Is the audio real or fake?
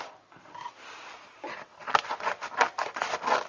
real